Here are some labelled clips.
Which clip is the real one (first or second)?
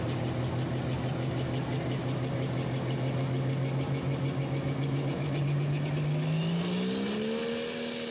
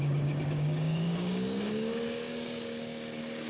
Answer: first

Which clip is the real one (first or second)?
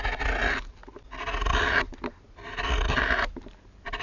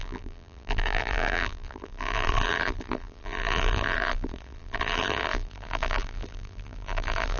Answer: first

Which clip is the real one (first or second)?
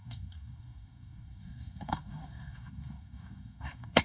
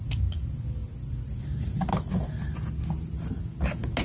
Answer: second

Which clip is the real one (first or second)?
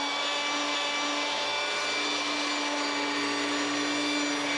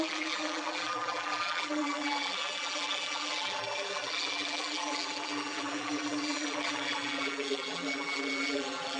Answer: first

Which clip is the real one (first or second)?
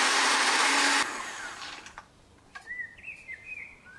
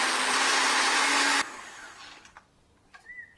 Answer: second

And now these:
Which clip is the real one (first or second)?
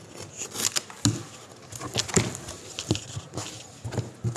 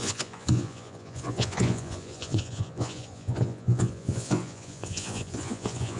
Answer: first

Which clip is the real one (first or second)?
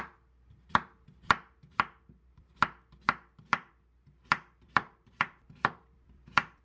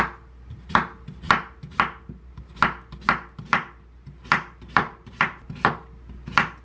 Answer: second